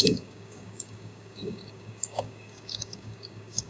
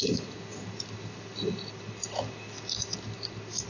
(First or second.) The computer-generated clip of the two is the first